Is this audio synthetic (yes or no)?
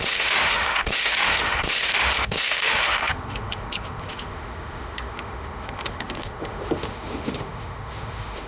yes